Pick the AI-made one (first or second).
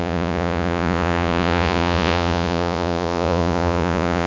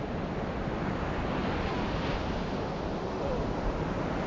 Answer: first